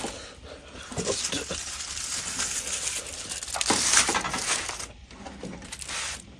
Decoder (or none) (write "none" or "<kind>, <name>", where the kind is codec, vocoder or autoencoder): none